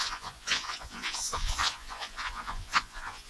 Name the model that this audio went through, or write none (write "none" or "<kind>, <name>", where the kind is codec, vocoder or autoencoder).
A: vocoder, Vocos